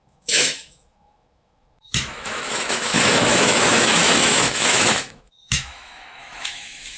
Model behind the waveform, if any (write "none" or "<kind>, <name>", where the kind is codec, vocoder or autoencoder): autoencoder, DAC-VAE